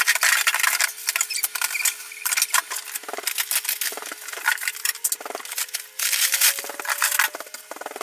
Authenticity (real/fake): real